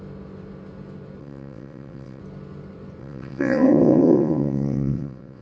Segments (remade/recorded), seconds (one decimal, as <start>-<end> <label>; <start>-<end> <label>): 0.0-1.2 recorded; 1.2-2.2 remade; 2.2-3.0 recorded; 3.0-5.4 remade